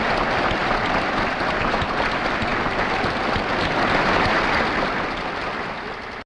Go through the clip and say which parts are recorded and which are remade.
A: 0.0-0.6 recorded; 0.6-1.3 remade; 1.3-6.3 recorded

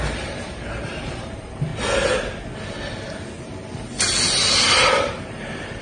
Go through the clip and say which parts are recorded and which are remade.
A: 0.0-1.7 remade; 1.7-5.2 recorded; 5.2-5.8 remade

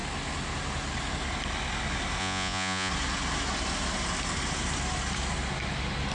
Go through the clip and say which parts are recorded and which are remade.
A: 0.0-2.2 recorded; 2.2-2.9 remade; 2.9-6.1 recorded

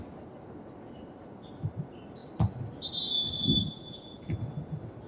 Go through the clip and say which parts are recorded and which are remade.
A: 0.0-3.6 recorded; 3.6-4.3 remade; 4.3-5.1 recorded

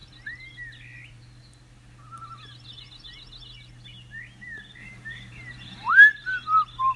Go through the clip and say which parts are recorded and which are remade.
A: 0.0-4.8 recorded; 4.8-5.9 remade; 5.9-7.0 recorded

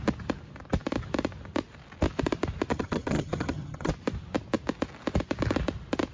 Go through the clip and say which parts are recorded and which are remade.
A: 0.0-2.7 recorded; 2.7-3.9 remade; 3.9-6.1 recorded